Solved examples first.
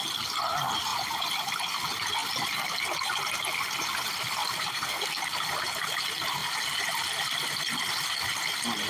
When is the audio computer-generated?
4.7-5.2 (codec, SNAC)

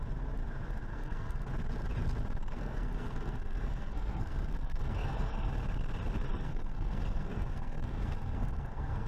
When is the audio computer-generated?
0.9-1.5 (codec, SNAC); 2.4-5.5; 6.3-9.1

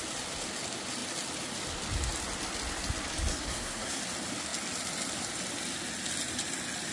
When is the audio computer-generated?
3.3-4.0 (codec, SNAC)

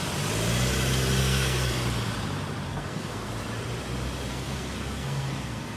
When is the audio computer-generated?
1.2-1.7 (codec, SNAC); 2.7-3.3; 4.3-5.8